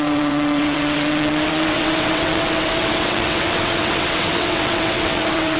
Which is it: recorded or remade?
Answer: remade